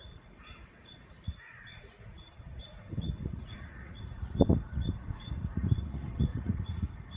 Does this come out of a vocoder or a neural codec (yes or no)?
yes